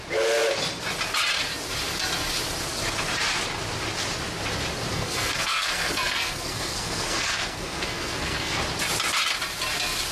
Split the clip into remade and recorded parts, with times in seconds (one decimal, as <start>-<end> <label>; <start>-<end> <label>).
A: 0.0-4.9 recorded; 4.9-8.6 remade; 8.6-10.1 recorded